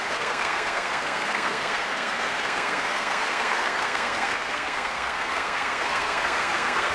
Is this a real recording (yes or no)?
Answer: no